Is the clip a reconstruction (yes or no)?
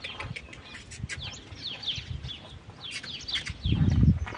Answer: no